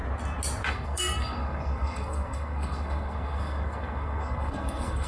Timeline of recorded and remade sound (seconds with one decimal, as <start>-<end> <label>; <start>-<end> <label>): 0.0-0.7 recorded; 0.7-5.1 remade